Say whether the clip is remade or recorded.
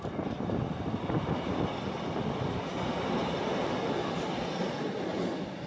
recorded